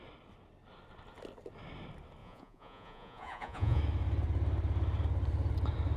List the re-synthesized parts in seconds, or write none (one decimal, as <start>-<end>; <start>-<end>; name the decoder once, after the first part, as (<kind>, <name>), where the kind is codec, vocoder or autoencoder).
2.2-3.8 (vocoder, Vocos)